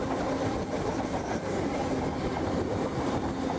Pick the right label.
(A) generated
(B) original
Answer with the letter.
B